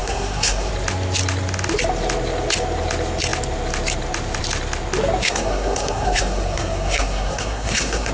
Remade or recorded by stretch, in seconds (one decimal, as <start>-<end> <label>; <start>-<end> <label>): 0.0-0.7 remade; 0.7-5.2 recorded; 5.2-8.1 remade